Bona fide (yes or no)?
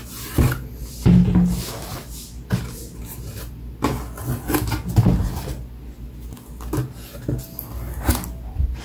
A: yes